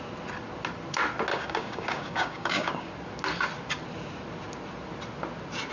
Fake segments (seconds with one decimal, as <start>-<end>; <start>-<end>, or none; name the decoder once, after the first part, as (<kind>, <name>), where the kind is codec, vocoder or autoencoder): 1.3-2.9 (codec, DAC)